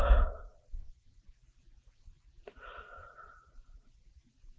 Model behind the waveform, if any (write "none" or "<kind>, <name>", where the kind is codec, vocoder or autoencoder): vocoder, BigVGAN v2